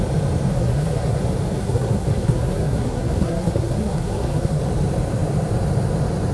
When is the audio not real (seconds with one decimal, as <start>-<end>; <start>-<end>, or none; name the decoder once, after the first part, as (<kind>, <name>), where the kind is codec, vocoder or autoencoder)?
0.5-1.2 (codec, SNAC); 1.6-4.6